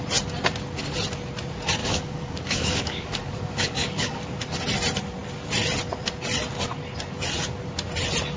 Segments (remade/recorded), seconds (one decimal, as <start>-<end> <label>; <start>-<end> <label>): 0.0-1.8 recorded; 1.8-4.2 remade; 4.2-8.4 recorded